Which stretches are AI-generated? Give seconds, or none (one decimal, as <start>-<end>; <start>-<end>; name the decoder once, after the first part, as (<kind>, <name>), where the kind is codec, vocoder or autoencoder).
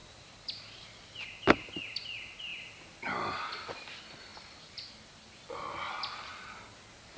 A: 0.0-1.2 (vocoder, BigVGAN v2); 4.3-4.9